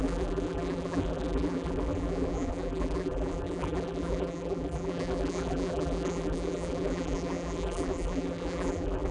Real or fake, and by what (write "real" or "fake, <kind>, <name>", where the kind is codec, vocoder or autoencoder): fake, vocoder, BigVGAN v2